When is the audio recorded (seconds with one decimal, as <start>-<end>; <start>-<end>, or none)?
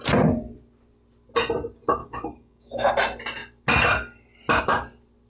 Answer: 0.0-2.0; 2.9-5.3